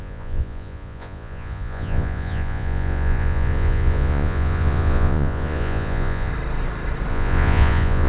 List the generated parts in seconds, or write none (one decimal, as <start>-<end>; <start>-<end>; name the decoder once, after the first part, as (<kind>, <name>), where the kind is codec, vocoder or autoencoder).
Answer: 0.0-6.3 (vocoder, Vocos); 7.1-8.1